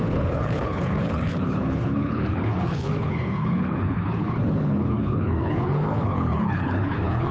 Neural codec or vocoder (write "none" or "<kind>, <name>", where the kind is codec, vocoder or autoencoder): codec, HILCodec